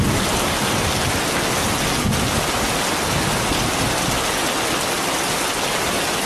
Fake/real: real